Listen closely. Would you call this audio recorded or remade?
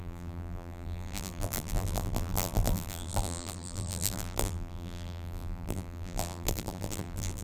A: remade